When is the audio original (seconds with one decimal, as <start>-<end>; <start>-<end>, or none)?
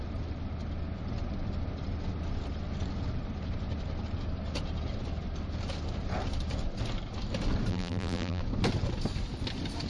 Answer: 0.0-7.7; 8.4-9.9